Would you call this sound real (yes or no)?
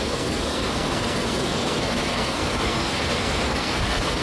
no